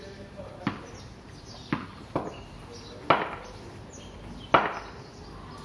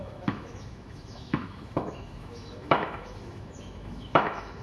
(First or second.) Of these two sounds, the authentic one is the first